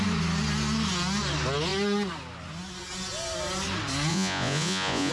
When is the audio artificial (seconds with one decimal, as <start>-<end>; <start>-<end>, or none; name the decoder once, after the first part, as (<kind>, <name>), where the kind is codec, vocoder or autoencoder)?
4.1-5.1 (vocoder, Vocos)